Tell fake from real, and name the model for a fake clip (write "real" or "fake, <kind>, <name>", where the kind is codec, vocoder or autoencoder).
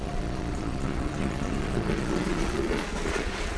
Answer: fake, vocoder, Vocos